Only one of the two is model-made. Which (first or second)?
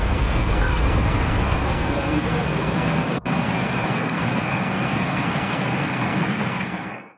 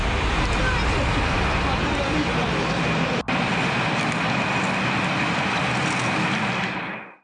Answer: first